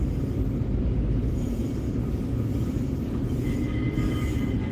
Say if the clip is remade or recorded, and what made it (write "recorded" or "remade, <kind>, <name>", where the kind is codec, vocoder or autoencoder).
recorded